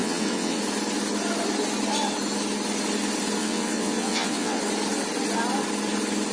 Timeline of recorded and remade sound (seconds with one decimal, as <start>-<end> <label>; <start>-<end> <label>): 0.0-0.6 remade; 0.6-3.4 recorded; 3.4-4.6 remade; 4.6-6.3 recorded